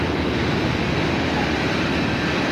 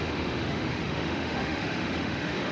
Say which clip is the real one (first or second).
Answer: first